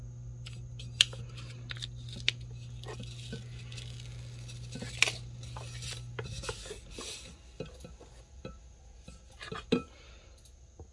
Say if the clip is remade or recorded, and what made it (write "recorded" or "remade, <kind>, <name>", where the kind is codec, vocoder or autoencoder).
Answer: recorded